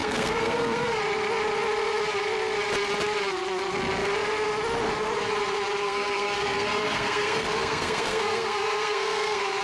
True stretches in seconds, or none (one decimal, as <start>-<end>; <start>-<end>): 1.0-5.8